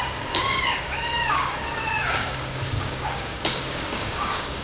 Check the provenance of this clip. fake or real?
fake